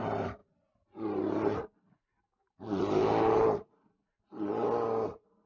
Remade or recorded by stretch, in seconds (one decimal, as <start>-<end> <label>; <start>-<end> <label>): 0.0-5.5 recorded